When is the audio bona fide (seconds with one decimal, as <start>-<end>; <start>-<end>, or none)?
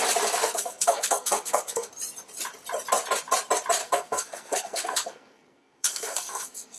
0.0-0.4; 1.9-3.8